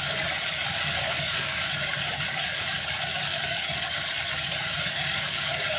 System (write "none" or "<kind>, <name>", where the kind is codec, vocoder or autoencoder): codec, DAC